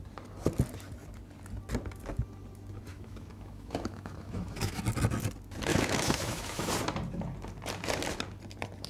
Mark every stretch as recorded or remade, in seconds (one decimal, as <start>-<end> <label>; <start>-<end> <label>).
0.0-2.9 recorded; 2.9-4.8 remade; 4.8-5.7 recorded; 5.7-6.7 remade; 6.7-8.9 recorded